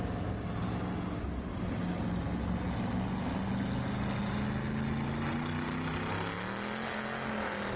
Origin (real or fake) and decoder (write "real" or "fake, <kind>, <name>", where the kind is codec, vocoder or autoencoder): real